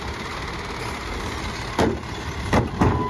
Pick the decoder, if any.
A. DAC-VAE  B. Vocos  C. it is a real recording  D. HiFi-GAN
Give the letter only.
C